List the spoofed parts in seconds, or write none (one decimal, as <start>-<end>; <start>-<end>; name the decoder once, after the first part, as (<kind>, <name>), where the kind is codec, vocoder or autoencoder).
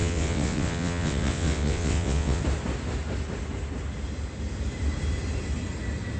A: 0.0-2.4 (vocoder, WaveNeXt)